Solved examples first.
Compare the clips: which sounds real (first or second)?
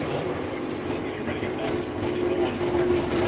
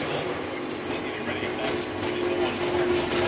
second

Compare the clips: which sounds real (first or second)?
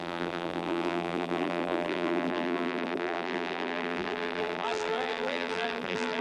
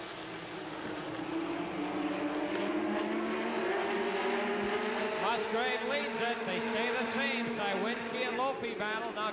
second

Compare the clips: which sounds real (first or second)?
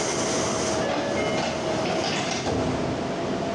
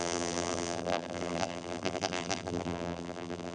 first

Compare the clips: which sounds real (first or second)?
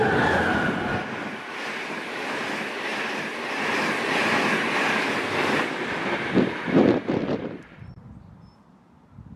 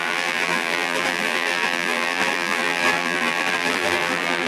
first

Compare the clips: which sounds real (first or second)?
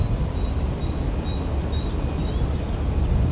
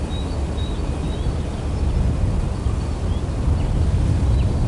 first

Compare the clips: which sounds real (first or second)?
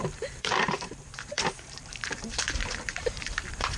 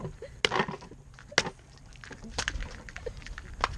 second